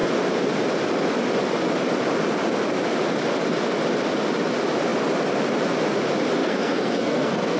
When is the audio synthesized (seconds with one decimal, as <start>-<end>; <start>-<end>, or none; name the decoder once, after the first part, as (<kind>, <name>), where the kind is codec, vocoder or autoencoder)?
6.4-7.6 (codec, SNAC)